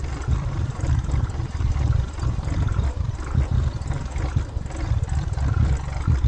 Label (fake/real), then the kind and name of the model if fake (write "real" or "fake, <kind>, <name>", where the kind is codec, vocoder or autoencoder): fake, vocoder, BigVGAN v2